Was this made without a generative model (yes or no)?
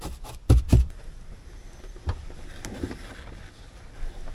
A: yes